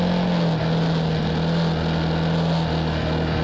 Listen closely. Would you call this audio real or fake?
real